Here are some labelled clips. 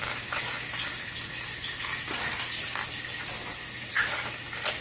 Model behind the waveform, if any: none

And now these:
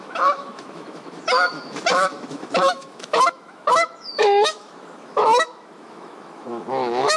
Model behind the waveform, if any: autoencoder, DAC-VAE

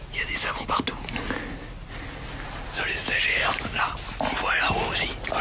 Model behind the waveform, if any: none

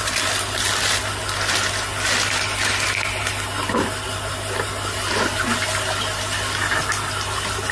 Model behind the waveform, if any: none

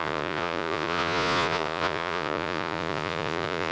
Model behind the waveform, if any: vocoder, Vocos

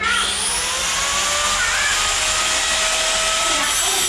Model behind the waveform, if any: none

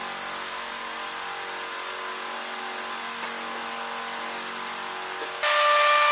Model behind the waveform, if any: none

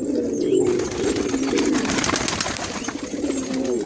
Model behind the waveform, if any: none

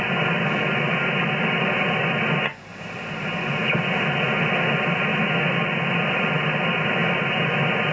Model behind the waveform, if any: none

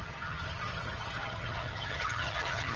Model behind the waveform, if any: vocoder, HiFi-GAN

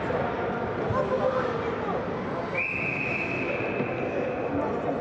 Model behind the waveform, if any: none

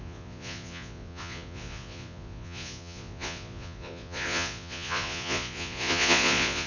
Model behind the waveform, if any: vocoder, Vocos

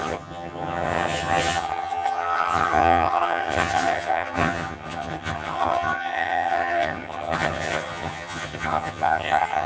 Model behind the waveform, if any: vocoder, HiFi-GAN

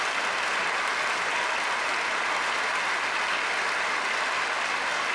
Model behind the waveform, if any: none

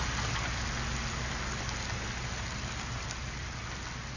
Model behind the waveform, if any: none